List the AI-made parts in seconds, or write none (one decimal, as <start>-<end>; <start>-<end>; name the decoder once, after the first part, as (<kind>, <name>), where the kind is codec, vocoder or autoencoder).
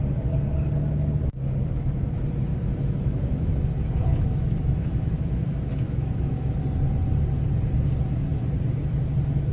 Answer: 2.5-3.6 (autoencoder, DAC-VAE); 4.1-6.5